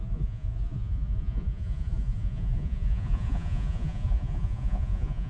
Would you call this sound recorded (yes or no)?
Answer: no